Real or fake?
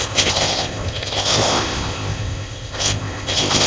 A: fake